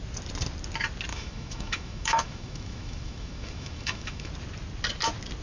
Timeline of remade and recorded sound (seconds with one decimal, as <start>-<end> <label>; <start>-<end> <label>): 0.0-1.1 recorded; 1.1-4.3 remade; 4.3-5.4 recorded